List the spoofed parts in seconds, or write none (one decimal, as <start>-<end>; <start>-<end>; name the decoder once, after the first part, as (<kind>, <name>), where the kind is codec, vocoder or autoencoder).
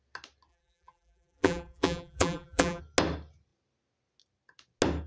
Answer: 0.5-2.8 (vocoder, BigVGAN v2)